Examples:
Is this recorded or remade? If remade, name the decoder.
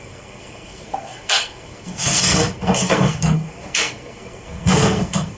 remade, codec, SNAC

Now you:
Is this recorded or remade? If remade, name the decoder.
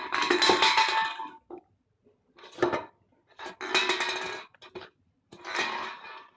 recorded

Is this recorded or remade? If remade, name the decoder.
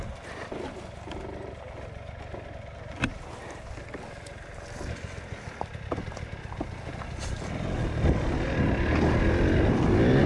recorded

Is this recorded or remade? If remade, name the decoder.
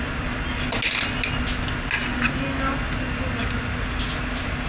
recorded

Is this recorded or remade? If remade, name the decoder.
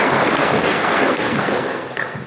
remade, codec, SNAC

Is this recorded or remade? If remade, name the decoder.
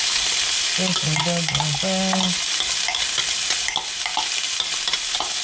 recorded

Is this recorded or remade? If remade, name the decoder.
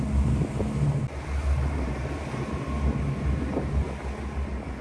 recorded